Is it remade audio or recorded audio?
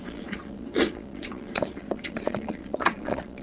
remade